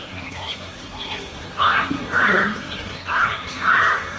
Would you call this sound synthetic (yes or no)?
yes